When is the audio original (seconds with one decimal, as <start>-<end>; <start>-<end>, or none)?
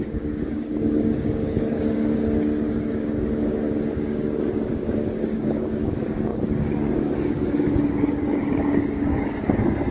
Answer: none